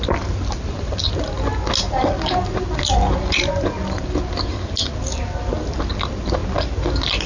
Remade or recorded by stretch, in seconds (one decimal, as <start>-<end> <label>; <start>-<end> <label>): 0.0-7.3 recorded